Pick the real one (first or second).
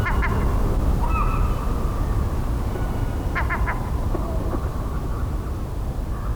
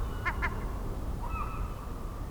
first